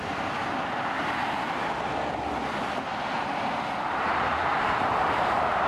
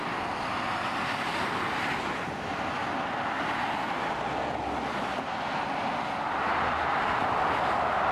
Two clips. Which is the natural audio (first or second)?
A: second